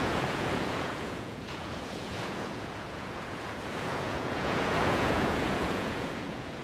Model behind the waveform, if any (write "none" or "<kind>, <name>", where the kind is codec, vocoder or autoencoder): vocoder, Vocos